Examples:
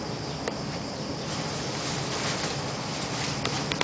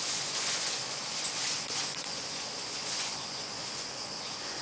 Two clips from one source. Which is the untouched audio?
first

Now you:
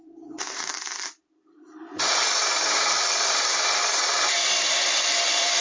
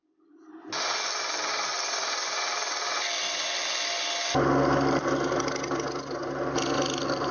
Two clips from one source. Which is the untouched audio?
second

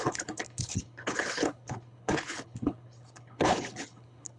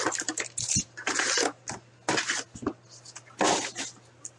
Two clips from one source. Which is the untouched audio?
second